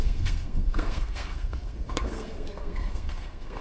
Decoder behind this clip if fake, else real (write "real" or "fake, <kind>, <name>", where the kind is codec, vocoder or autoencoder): fake, codec, SNAC